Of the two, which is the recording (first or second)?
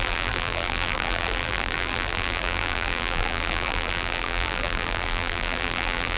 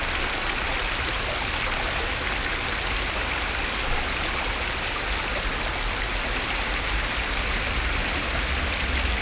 second